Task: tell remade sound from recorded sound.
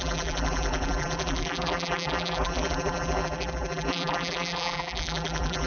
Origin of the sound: remade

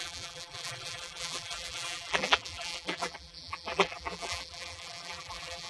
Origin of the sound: remade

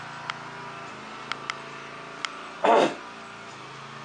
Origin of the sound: recorded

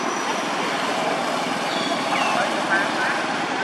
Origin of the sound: recorded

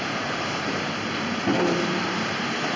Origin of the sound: remade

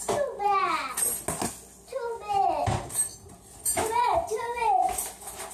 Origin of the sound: recorded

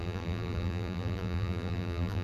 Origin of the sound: remade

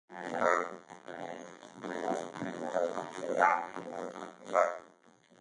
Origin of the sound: remade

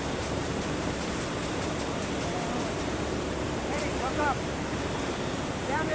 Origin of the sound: remade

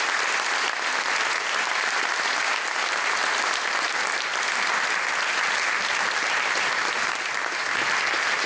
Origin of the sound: recorded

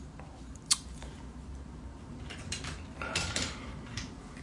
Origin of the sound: remade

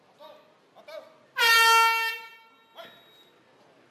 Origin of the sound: recorded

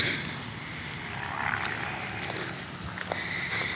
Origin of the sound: recorded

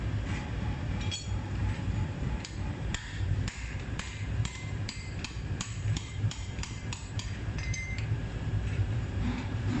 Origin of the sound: remade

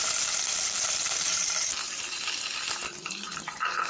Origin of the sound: remade